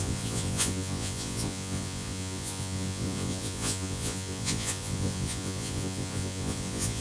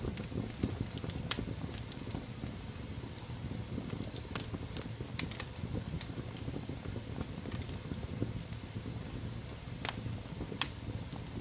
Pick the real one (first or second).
second